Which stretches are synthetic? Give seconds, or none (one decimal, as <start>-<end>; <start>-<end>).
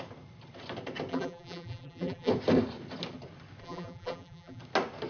1.1-2.3; 3.6-4.6